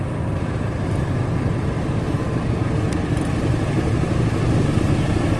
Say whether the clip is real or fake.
real